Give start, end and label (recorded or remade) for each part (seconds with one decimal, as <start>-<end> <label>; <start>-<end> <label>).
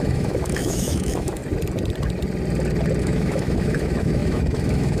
0.0-1.4 remade; 1.4-3.0 recorded; 3.0-5.0 remade